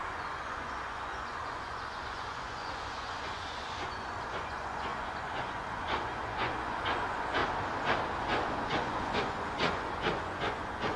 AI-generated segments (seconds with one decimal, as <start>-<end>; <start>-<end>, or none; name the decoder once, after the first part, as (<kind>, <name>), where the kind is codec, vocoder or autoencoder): 0.0-7.4 (vocoder, Vocos); 8.2-11.0